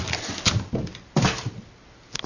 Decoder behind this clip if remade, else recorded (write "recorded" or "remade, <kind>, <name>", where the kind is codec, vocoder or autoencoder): recorded